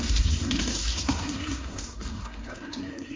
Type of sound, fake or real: fake